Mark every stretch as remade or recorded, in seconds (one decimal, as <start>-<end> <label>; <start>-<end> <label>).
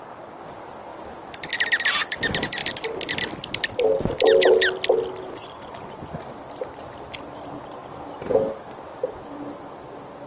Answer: 0.0-5.4 recorded; 5.4-6.2 remade; 6.2-10.3 recorded